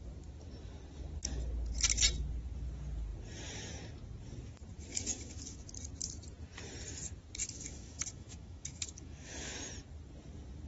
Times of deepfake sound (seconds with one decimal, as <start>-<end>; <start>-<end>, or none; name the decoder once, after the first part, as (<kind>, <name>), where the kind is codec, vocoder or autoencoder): 4.9-5.6 (autoencoder, DAC-VAE); 7.4-9.5